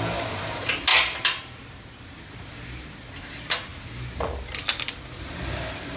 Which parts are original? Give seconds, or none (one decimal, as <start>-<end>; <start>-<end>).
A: 0.0-6.0